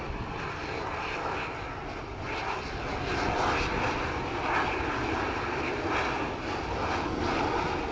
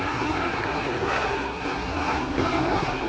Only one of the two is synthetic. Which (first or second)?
second